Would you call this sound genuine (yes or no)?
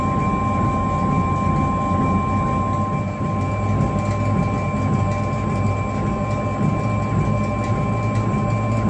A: yes